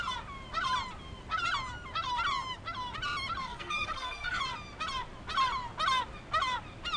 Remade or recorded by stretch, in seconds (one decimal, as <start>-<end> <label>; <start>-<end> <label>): 0.0-3.4 recorded; 3.4-4.4 remade; 4.4-7.0 recorded